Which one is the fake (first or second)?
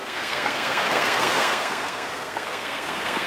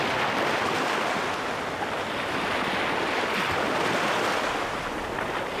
first